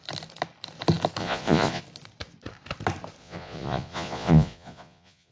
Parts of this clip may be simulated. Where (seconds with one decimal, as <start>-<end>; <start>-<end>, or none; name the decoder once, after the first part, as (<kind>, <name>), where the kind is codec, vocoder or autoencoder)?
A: 1.2-1.8 (vocoder, Vocos); 3.2-5.3